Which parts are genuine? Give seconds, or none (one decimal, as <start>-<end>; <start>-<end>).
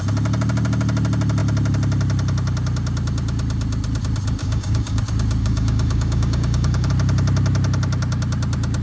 0.0-4.4; 5.0-5.4; 6.9-8.8